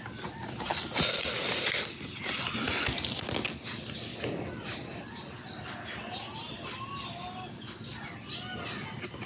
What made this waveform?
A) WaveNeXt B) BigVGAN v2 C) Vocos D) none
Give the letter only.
D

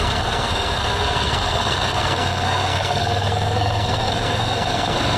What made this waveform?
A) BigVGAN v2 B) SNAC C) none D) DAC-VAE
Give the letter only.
B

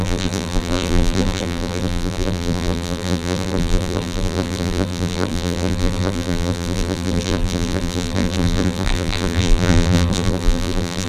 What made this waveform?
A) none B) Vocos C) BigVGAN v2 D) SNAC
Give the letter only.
C